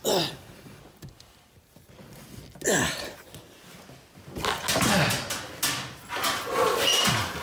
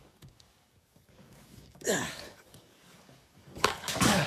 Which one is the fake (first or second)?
second